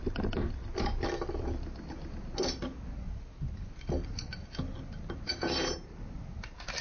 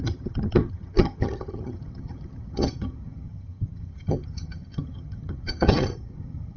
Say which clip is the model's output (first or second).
second